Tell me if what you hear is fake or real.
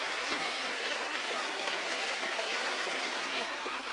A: fake